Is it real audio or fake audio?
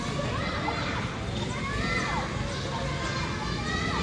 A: real